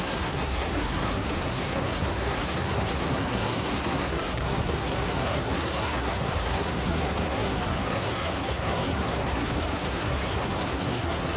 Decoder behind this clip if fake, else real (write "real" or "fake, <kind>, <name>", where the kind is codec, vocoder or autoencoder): fake, codec, SNAC